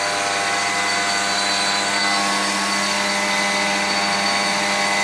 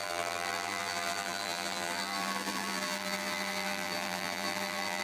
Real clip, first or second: first